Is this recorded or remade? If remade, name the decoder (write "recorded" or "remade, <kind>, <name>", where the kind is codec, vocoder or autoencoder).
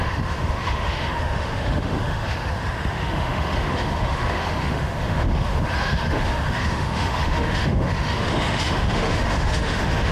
remade, autoencoder, DAC-VAE